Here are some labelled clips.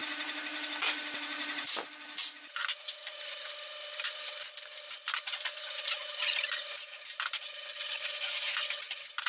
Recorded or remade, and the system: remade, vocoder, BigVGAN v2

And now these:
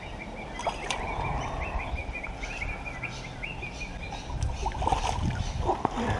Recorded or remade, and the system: recorded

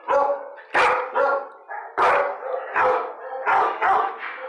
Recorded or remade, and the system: recorded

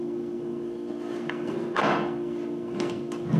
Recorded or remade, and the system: remade, codec, SNAC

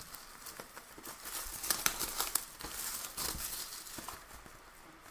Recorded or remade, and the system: recorded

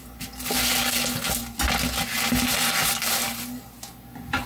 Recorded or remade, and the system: recorded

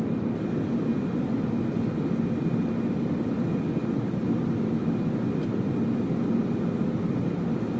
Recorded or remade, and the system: recorded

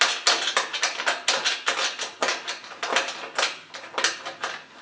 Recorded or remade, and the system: recorded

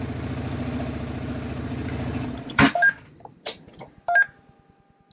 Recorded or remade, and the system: recorded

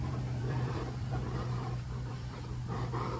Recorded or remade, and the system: remade, vocoder, BigVGAN v2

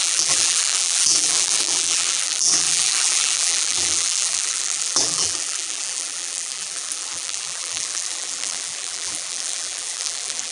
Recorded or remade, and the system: remade, vocoder, BigVGAN v2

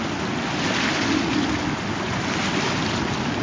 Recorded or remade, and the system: recorded